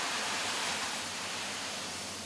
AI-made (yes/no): yes